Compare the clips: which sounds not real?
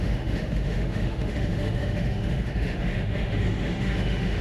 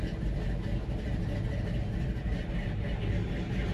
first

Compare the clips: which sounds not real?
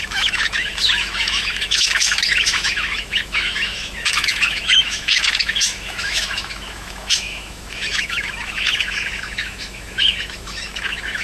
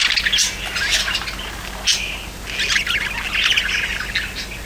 first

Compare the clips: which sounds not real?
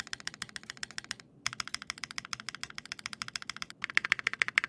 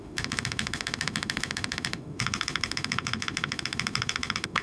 second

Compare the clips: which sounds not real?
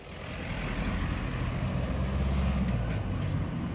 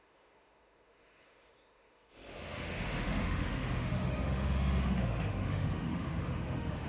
second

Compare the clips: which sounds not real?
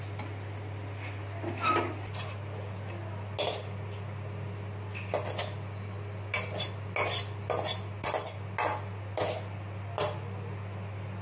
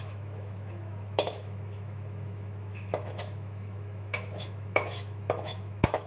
second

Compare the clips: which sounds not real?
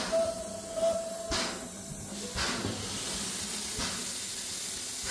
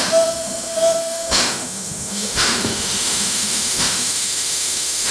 second